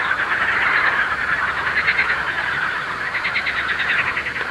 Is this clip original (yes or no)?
yes